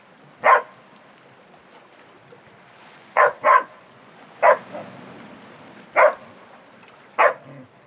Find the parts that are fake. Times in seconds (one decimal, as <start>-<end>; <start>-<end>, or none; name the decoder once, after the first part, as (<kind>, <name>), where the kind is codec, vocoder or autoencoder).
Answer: 2.7-4.4 (vocoder, Vocos)